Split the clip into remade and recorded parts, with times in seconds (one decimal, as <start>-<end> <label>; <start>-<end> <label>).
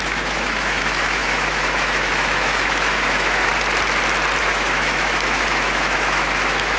0.0-3.5 remade; 3.5-4.4 recorded; 4.4-6.8 remade